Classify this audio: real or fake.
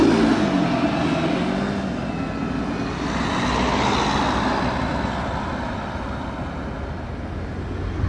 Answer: real